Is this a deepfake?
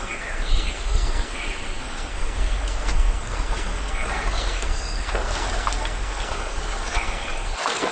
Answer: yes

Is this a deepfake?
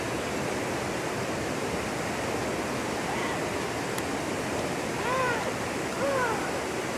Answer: no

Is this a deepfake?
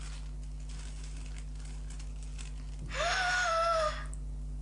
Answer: no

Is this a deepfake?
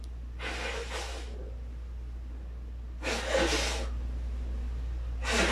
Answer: no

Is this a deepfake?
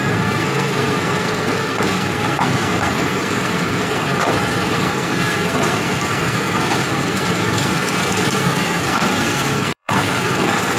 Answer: yes